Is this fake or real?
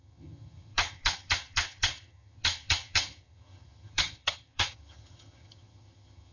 fake